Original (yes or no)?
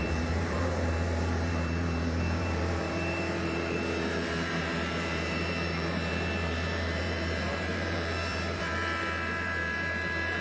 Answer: no